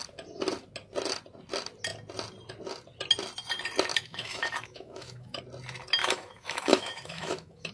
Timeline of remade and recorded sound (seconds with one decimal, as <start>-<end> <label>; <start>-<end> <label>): 0.0-3.9 recorded; 3.9-5.4 remade; 5.4-6.0 recorded; 6.0-7.7 remade

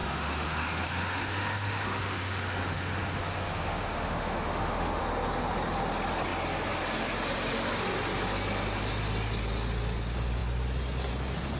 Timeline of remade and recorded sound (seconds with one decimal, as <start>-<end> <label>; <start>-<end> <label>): 0.0-5.0 remade; 5.0-11.6 recorded